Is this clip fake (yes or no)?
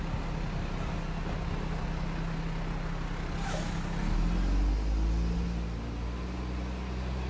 no